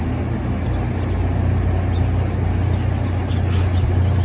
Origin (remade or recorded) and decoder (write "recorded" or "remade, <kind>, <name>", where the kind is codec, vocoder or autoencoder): recorded